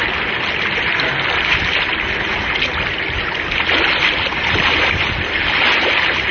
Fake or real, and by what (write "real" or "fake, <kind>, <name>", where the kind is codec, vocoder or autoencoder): real